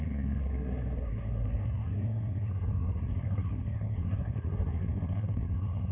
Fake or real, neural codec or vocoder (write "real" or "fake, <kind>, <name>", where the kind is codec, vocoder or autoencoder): fake, codec, SNAC